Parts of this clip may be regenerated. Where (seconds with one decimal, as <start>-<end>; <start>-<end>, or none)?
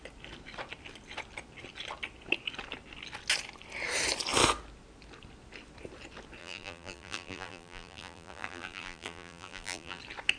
6.4-10.0